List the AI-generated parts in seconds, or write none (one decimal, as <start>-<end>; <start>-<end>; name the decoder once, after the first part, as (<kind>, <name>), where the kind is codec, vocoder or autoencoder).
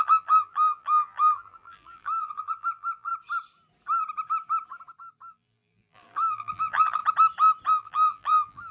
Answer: 0.0-3.1 (vocoder, BigVGAN v2); 5.3-7.0; 7.7-8.7